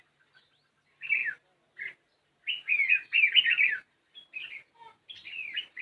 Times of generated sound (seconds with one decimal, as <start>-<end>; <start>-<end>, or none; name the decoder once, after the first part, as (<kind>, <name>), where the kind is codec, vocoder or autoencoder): none